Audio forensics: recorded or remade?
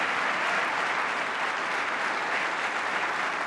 recorded